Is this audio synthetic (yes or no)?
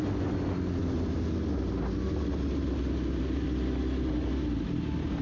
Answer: no